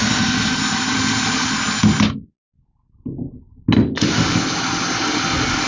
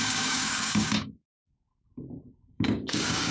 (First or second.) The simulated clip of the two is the second